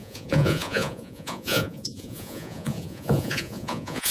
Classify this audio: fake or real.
fake